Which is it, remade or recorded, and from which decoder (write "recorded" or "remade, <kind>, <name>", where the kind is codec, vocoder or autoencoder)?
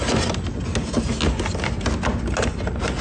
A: recorded